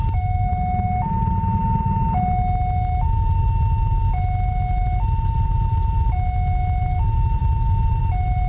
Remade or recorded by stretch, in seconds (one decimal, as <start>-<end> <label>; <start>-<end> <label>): 0.0-8.5 recorded